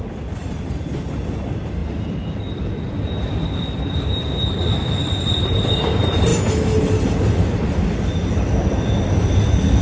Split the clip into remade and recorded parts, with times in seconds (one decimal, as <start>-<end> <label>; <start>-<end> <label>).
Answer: 0.0-1.8 remade; 1.8-3.6 recorded; 3.6-6.3 remade; 6.3-7.2 recorded; 7.2-9.8 remade